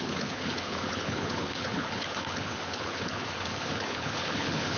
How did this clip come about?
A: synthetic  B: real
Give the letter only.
A